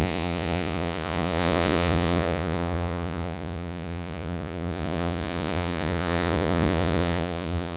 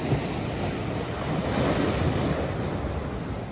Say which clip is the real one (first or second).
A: second